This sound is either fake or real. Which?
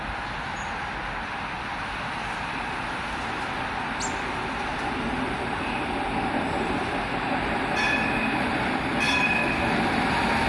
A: real